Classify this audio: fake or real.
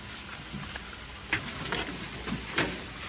real